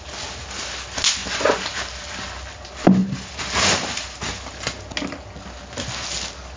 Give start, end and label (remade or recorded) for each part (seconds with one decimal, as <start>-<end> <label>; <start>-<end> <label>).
0.0-3.0 recorded; 3.0-4.2 remade; 4.2-6.6 recorded